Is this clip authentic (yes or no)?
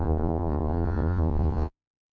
no